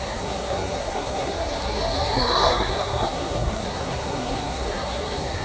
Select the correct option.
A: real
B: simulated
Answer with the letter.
B